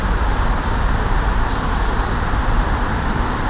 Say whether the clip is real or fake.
fake